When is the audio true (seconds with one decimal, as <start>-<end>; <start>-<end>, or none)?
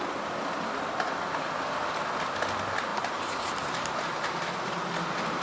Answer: 0.0-2.9; 4.1-5.4